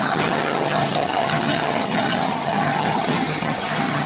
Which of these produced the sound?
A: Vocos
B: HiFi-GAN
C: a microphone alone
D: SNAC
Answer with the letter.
B